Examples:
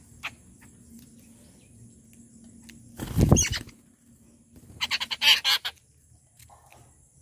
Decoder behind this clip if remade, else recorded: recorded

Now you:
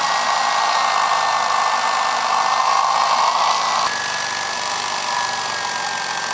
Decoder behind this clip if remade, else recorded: recorded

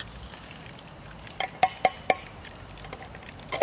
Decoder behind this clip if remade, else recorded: remade, vocoder, BigVGAN v2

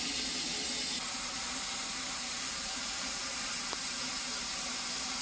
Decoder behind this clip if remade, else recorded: remade, vocoder, BigVGAN v2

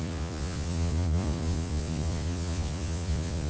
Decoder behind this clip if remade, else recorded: remade, vocoder, Vocos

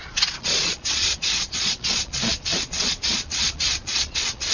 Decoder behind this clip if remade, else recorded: remade, vocoder, Vocos